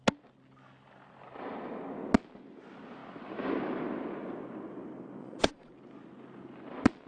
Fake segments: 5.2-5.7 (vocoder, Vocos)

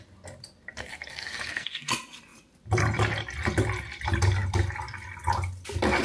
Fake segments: 0.8-1.9 (codec, SNAC)

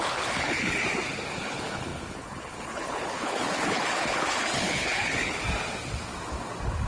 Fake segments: 0.0-0.8 (codec, HILCodec); 1.3-5.4